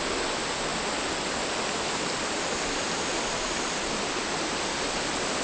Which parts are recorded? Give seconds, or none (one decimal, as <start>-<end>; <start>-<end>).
0.0-5.4